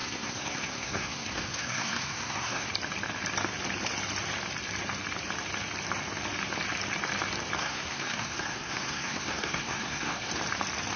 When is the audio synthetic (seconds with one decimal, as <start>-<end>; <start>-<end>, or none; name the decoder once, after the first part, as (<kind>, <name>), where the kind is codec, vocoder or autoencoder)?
0.0-2.7 (codec, SNAC); 7.6-10.3